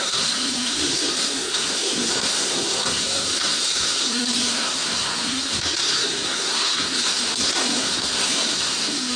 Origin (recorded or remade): remade